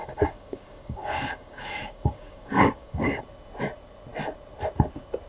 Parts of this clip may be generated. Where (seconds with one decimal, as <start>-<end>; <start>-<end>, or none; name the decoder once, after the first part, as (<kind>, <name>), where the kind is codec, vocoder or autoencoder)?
0.0-3.2 (codec, DAC)